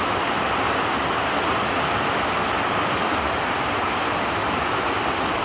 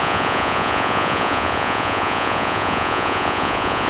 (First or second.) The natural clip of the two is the first